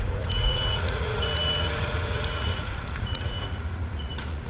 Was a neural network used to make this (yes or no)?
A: yes